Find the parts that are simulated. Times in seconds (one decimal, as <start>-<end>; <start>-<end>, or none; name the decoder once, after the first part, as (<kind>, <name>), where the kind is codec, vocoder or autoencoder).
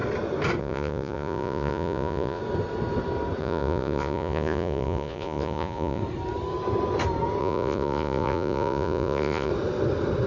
0.6-2.4 (vocoder, Vocos); 3.4-6.0; 7.4-9.5